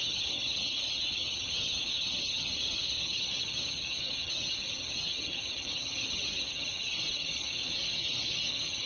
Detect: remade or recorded remade